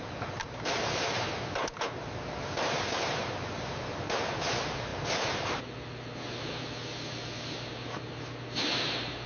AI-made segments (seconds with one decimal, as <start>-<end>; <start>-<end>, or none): none